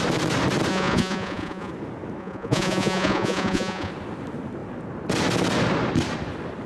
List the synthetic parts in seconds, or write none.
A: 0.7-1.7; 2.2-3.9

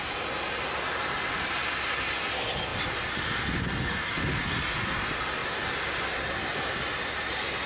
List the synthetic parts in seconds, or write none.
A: none

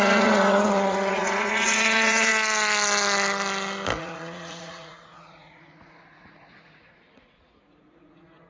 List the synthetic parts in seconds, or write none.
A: 0.0-2.3; 4.0-8.5

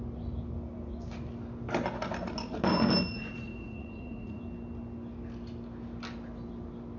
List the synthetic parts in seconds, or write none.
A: 3.1-4.4